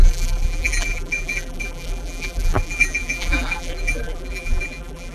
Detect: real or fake fake